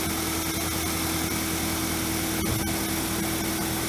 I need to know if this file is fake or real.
real